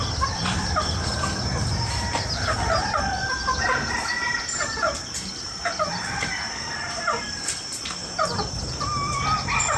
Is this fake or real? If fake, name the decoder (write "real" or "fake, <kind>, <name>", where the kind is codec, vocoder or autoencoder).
fake, vocoder, BigVGAN v2